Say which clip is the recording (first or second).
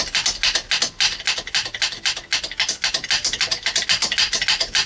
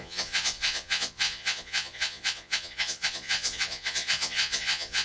first